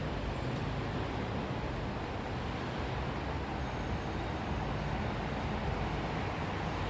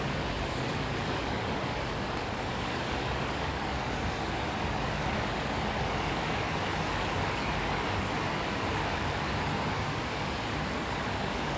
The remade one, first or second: second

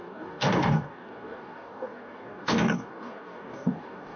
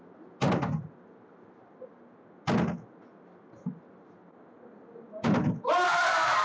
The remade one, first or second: first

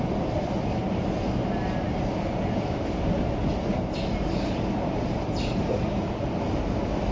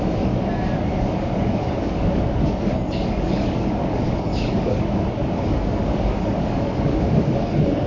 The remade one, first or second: second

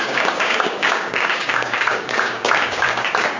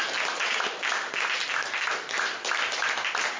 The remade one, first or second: first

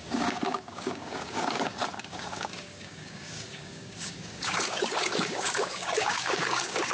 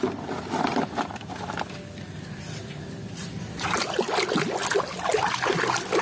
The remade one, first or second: first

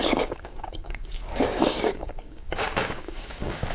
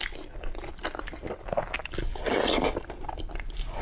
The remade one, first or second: first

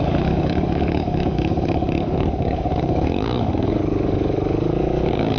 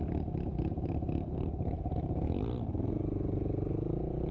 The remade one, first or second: first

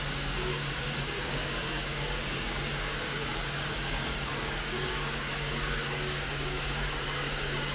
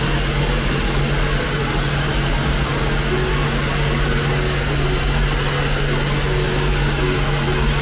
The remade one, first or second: first